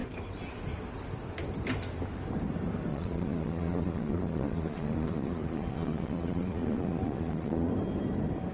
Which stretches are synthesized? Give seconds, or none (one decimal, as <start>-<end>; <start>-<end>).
2.9-7.7